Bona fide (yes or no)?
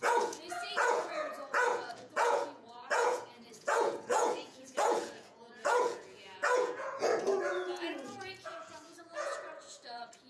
no